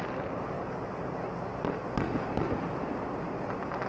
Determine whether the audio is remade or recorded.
recorded